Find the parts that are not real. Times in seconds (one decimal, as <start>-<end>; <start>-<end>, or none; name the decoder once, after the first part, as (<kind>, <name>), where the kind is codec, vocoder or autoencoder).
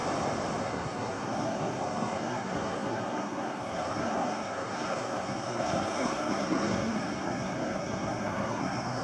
0.6-9.0 (codec, SNAC)